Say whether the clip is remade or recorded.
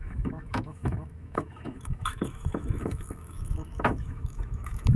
remade